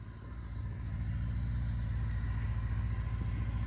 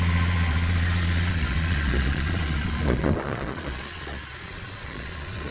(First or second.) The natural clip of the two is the first